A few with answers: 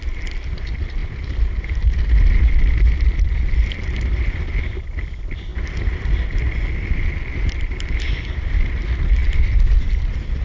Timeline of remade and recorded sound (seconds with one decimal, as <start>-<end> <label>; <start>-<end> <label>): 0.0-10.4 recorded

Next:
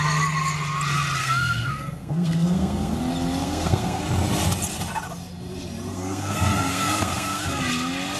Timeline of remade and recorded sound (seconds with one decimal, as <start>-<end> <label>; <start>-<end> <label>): 0.0-1.2 recorded; 1.2-3.0 remade; 3.0-3.4 recorded; 3.4-4.0 remade; 4.0-5.9 recorded; 5.9-7.6 remade; 7.6-8.2 recorded

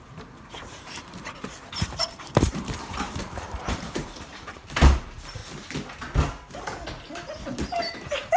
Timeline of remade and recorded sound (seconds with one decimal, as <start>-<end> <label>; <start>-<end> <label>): 0.0-5.4 remade; 5.4-7.4 recorded; 7.4-8.4 remade

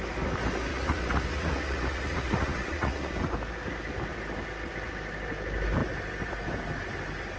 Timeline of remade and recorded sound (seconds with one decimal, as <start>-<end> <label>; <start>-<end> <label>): 0.0-0.7 recorded; 0.7-3.1 remade; 3.1-7.4 recorded

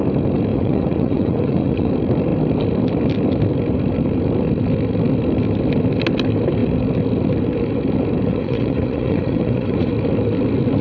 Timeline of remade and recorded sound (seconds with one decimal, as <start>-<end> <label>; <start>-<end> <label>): 0.0-0.5 recorded; 0.5-1.9 remade; 1.9-8.3 recorded; 8.3-9.9 remade; 9.9-10.8 recorded

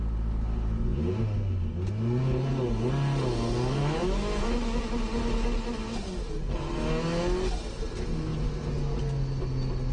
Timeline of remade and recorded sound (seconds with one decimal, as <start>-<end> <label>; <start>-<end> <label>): 0.0-3.8 recorded; 3.8-4.8 remade; 4.8-9.9 recorded

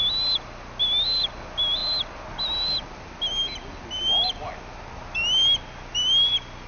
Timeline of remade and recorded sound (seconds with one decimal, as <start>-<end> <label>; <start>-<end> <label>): 0.0-6.7 recorded